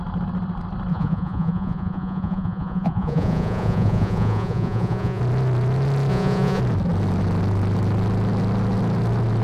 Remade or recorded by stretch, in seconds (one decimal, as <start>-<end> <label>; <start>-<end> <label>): 0.0-0.9 recorded; 0.9-5.2 remade; 5.2-6.1 recorded; 6.1-6.6 remade; 6.6-9.4 recorded